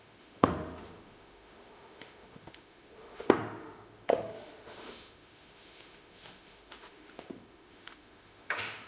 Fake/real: fake